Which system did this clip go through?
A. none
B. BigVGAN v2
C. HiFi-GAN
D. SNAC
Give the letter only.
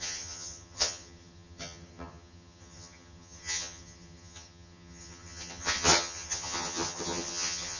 C